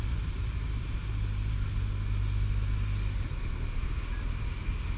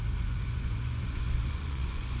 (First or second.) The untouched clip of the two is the first